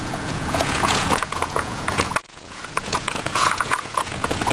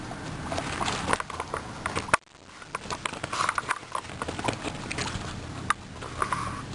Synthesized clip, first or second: first